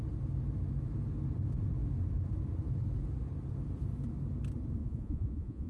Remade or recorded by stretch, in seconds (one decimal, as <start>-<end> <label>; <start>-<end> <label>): 0.0-4.8 recorded; 4.8-5.7 remade